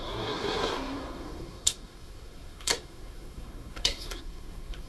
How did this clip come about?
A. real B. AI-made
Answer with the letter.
B